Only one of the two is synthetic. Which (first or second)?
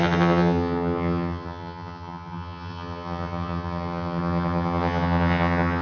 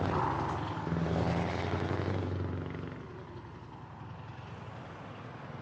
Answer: first